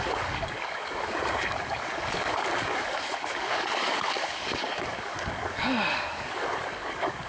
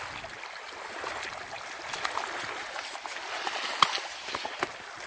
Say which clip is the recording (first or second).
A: second